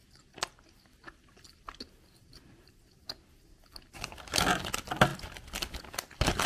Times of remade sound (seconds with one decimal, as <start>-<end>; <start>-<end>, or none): none